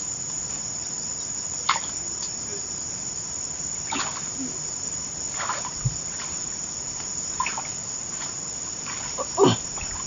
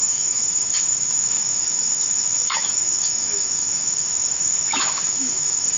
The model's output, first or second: second